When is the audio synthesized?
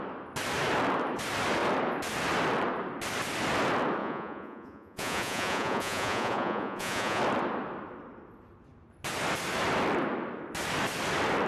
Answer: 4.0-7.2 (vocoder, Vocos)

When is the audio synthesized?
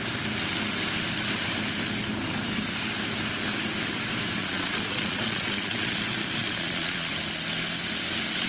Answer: 4.4-6.0 (vocoder, Vocos); 6.4-7.1